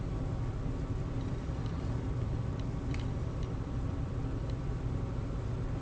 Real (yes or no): no